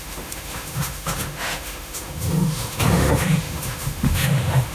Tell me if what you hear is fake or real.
fake